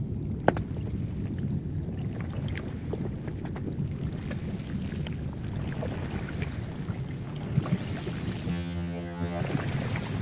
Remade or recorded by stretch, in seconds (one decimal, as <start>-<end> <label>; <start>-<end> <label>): 0.0-8.5 recorded; 8.5-9.4 remade; 9.4-10.2 recorded